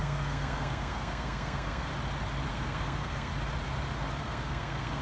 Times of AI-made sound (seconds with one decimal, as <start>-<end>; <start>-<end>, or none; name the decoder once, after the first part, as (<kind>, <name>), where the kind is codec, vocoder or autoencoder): 0.0-1.9 (codec, SNAC); 2.5-3.3; 4.2-5.0